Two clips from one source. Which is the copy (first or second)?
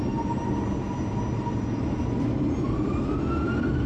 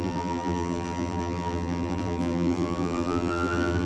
second